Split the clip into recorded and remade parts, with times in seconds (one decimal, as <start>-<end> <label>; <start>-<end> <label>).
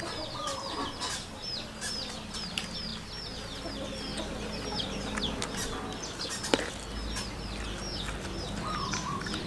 0.0-9.5 recorded